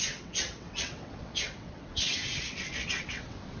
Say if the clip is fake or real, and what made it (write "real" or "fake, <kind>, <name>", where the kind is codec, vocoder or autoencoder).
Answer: fake, vocoder, WaveNeXt